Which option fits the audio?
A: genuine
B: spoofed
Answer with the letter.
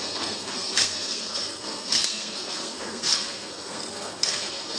B